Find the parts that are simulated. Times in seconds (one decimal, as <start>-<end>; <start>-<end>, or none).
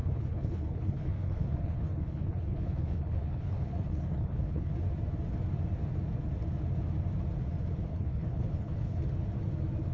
0.0-4.7; 7.9-9.0